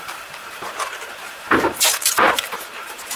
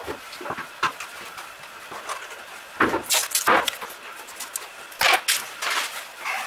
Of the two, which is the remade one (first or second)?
first